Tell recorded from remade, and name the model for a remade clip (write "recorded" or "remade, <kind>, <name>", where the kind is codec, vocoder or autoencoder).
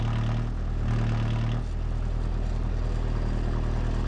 recorded